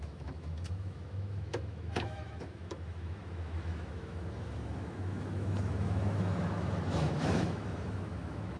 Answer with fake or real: fake